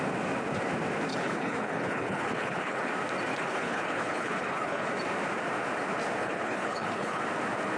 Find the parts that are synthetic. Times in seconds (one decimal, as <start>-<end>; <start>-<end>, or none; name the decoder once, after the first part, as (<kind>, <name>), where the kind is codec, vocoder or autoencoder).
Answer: 1.1-2.9 (codec, HILCodec); 3.3-4.9; 6.2-7.2